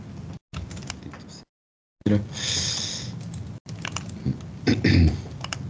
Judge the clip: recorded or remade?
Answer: recorded